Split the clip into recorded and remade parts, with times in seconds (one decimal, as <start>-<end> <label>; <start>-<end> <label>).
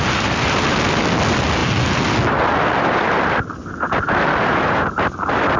0.0-5.6 recorded